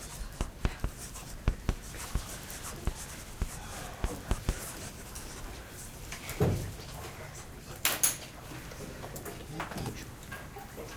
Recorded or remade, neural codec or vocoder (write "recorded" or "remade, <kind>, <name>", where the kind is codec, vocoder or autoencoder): recorded